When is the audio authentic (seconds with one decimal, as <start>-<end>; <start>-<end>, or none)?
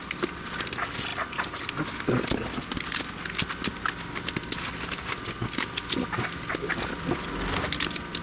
0.0-8.2